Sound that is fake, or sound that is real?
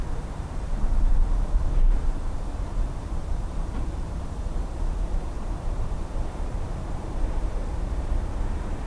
fake